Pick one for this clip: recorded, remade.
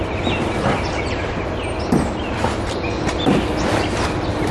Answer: recorded